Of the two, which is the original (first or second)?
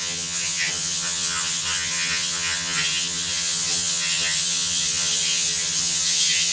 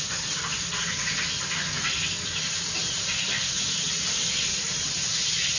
second